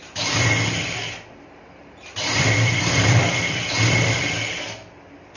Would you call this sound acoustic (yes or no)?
no